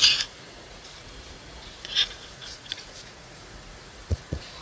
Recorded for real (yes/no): no